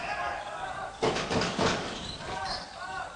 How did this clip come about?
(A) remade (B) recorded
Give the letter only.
A